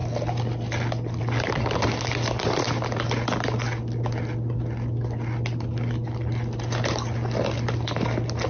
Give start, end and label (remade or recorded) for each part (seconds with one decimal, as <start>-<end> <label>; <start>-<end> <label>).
0.0-8.5 recorded